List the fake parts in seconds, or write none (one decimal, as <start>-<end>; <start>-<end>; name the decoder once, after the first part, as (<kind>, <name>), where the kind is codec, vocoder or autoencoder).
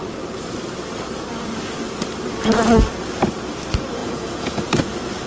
4.0-4.6 (vocoder, Vocos)